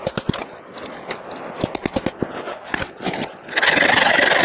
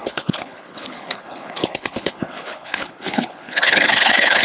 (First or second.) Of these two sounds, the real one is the first